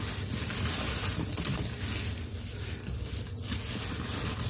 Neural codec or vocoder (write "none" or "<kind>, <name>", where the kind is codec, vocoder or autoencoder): none